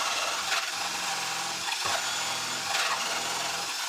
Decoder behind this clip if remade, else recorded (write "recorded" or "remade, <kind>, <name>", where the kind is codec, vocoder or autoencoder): recorded